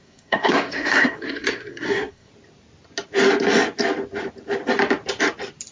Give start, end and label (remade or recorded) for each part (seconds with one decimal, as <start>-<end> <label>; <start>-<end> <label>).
0.0-2.3 remade; 2.3-5.7 recorded